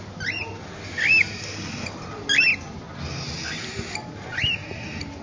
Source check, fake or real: real